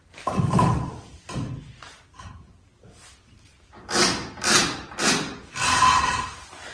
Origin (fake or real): real